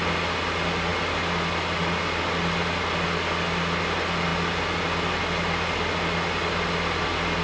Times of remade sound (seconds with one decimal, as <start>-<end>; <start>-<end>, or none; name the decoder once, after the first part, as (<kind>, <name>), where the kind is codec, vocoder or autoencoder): none